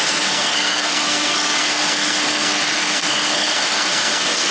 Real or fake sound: fake